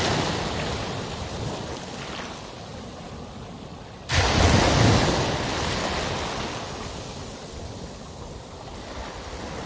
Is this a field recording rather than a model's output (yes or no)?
yes